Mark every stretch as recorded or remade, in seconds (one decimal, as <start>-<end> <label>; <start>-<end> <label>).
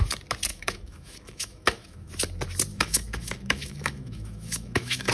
0.0-0.5 recorded; 0.5-2.1 remade; 2.1-2.7 recorded; 2.7-5.1 remade